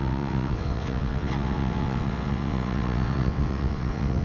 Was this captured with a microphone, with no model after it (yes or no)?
no